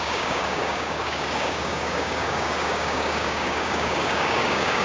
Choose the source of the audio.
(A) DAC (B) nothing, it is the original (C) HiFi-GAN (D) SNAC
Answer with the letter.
A